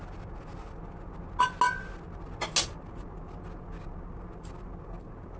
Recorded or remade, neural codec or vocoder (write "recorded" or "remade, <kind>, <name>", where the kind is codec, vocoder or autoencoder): recorded